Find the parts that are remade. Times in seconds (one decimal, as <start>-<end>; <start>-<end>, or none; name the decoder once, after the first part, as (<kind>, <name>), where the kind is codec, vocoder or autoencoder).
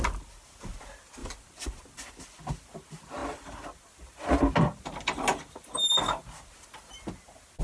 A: 1.2-2.2 (vocoder, BigVGAN v2)